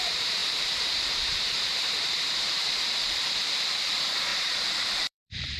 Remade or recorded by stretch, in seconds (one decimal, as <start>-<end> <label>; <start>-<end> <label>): 0.0-5.6 remade